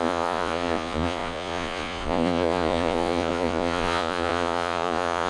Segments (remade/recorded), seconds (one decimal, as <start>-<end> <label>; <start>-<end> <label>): 0.0-5.3 remade